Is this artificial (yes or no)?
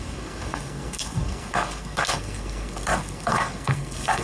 yes